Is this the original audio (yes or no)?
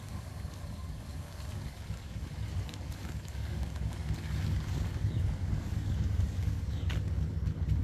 no